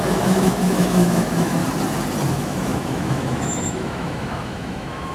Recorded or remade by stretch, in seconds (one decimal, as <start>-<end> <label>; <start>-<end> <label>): 0.0-1.6 remade; 1.6-2.3 recorded; 2.3-5.1 remade